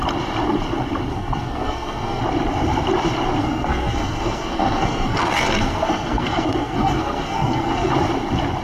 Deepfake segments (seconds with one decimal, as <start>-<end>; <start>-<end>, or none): 1.1-2.2; 3.4-7.9